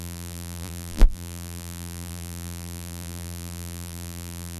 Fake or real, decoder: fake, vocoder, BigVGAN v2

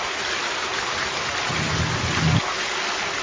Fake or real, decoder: real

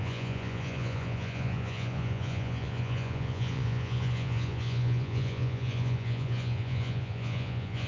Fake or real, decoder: fake, vocoder, Vocos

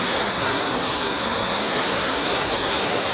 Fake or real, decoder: fake, codec, SNAC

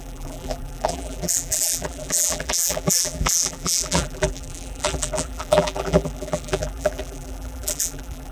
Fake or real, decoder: fake, vocoder, BigVGAN v2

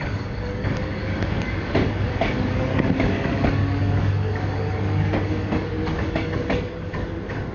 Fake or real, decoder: fake, codec, DAC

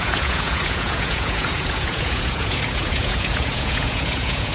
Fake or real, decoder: fake, vocoder, Vocos